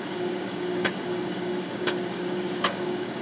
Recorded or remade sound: remade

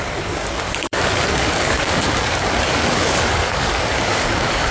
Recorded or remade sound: remade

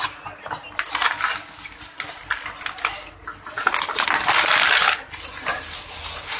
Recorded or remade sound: recorded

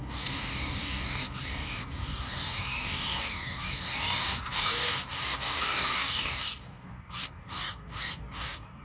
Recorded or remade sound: remade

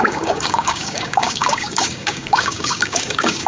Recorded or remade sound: remade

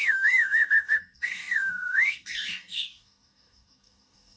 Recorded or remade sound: remade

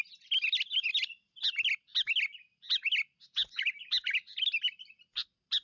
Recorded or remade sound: recorded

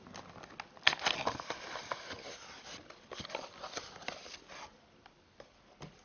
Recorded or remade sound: recorded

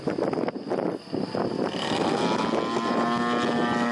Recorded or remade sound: recorded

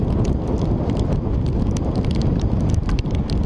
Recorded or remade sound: recorded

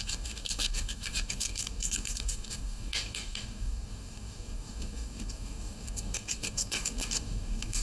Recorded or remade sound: remade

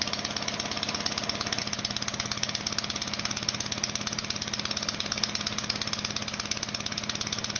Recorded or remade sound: recorded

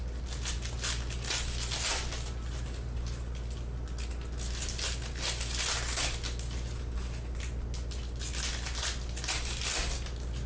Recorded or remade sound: recorded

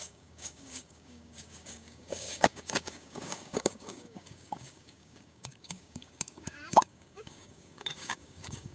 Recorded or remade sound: remade